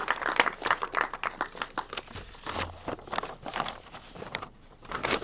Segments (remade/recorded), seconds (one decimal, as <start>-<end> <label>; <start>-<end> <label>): 0.0-3.5 recorded; 3.5-5.2 remade